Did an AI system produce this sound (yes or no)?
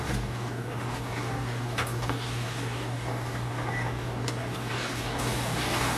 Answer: yes